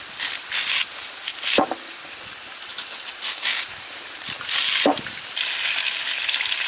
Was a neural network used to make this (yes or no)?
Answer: no